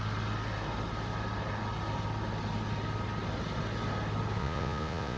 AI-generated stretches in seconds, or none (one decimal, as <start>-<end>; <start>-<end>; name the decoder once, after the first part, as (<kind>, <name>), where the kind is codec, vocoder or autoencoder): 4.4-5.2 (vocoder, Vocos)